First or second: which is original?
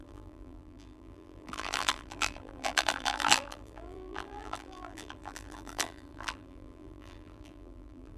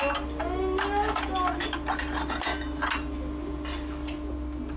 second